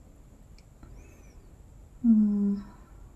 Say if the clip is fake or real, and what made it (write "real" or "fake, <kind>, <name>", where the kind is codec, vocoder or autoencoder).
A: real